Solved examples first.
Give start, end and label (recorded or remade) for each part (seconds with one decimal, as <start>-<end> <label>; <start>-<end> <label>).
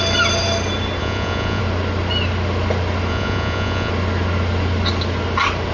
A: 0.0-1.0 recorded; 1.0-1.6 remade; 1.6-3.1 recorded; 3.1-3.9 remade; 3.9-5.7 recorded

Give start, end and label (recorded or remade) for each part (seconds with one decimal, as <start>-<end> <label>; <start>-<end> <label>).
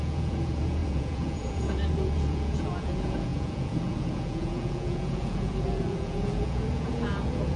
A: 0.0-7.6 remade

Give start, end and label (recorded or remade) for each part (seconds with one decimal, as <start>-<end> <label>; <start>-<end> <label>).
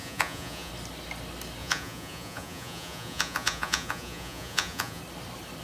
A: 0.0-0.7 remade; 0.7-1.6 recorded; 1.6-5.0 remade; 5.0-5.6 recorded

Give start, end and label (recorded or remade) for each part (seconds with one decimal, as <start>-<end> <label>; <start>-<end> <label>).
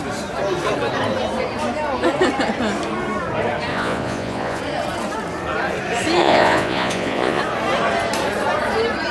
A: 0.0-3.7 recorded; 3.7-4.6 remade; 4.6-6.2 recorded; 6.2-7.4 remade; 7.4-9.1 recorded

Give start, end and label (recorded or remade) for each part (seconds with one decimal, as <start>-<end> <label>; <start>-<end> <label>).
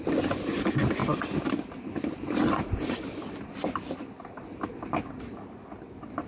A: 0.0-6.3 recorded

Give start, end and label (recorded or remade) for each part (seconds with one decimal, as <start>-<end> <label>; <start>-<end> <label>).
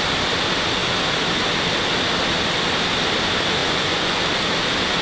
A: 0.0-3.6 recorded; 3.6-4.2 remade; 4.2-5.0 recorded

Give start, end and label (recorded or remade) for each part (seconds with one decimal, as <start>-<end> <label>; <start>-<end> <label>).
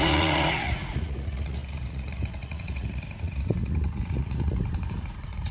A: 0.0-5.5 remade